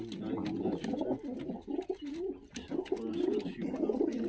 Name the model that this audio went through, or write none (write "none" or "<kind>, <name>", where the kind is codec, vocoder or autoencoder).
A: none